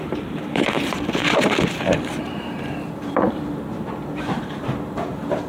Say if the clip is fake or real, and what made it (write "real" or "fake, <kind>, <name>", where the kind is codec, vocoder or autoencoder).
fake, vocoder, BigVGAN v2